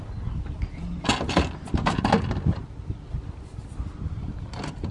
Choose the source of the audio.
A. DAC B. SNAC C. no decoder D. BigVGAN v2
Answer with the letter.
C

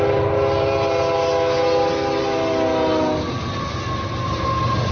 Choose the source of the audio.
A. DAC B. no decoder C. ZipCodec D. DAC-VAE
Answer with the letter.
B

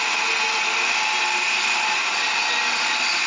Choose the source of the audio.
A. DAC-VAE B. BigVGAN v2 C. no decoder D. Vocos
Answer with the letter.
C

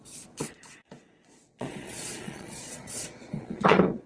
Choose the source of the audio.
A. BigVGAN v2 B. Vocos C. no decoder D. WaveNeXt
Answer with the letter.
B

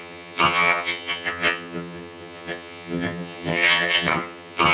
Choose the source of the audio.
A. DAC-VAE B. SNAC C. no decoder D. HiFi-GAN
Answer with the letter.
D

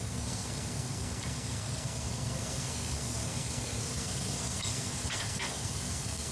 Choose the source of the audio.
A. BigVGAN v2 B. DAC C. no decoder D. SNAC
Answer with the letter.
D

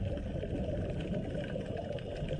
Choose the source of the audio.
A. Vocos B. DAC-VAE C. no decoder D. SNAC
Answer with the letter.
C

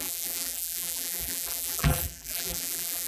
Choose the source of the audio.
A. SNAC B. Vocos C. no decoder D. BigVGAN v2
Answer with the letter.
D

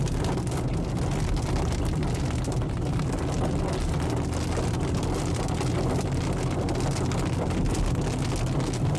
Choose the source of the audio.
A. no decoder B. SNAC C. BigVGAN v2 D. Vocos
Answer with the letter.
A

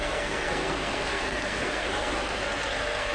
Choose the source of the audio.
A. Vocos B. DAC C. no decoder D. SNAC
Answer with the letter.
D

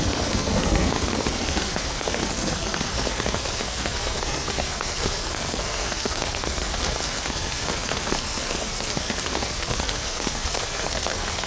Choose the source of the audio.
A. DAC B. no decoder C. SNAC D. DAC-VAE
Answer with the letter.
C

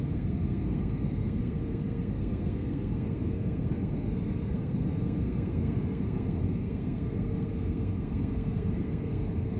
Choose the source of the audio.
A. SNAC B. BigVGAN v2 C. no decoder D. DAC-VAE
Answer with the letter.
A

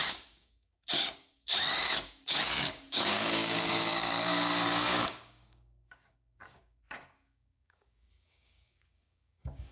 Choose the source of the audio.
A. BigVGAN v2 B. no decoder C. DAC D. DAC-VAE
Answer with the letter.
C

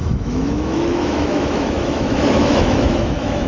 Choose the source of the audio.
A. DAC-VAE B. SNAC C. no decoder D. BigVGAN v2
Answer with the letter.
A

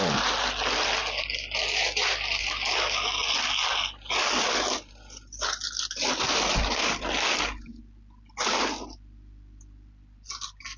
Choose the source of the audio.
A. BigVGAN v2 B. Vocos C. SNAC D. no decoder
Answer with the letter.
D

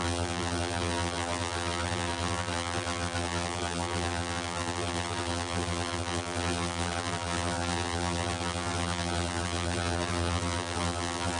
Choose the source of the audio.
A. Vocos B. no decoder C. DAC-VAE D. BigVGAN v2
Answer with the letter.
D